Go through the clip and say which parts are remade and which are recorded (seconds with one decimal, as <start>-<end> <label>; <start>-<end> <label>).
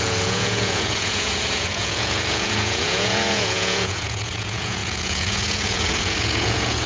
0.0-6.9 remade